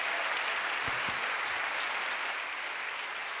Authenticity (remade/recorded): recorded